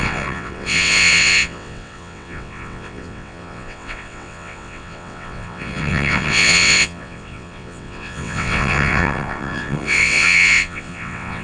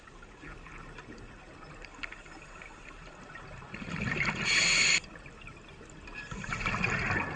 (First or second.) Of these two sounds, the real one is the second